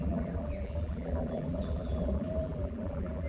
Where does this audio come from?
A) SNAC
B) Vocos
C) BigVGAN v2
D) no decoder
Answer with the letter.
C